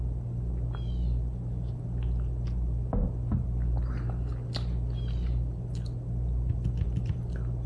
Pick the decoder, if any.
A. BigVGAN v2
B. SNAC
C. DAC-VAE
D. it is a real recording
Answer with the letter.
D